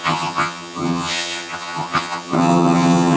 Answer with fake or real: fake